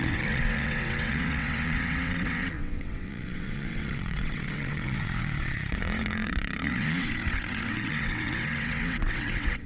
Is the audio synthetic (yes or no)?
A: yes